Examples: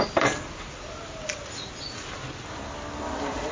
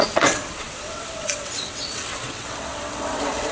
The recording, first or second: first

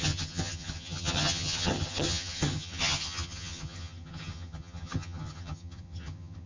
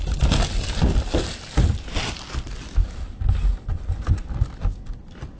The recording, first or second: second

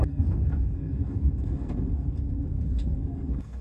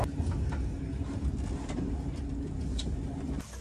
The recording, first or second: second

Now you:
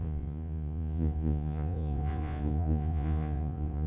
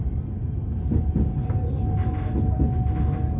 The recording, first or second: second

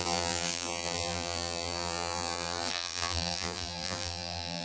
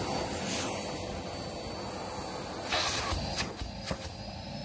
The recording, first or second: second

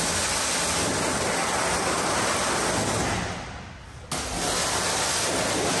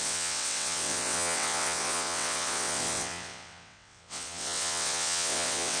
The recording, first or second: first